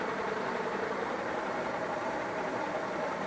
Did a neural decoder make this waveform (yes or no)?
yes